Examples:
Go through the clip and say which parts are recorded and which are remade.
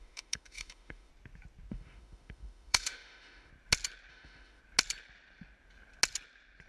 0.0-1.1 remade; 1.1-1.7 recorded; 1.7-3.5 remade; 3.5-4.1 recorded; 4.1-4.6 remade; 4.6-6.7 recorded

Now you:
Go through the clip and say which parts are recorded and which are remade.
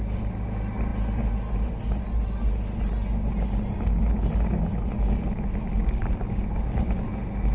0.0-5.8 recorded; 5.8-6.8 remade; 6.8-7.5 recorded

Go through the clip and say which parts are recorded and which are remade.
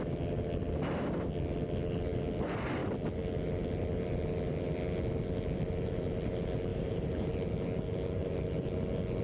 0.0-6.7 recorded; 6.7-7.3 remade; 7.3-9.2 recorded